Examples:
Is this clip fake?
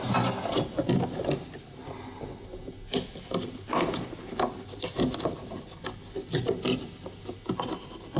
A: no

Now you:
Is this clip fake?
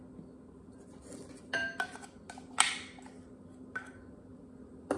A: no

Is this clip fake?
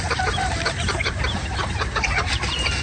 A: yes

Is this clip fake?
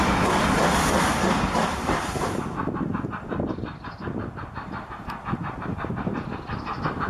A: no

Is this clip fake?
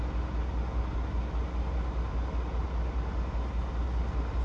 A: no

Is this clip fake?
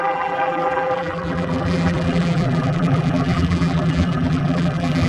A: yes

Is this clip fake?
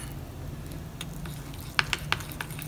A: no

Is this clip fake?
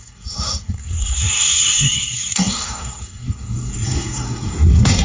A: yes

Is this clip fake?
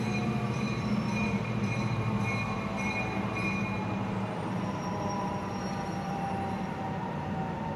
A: yes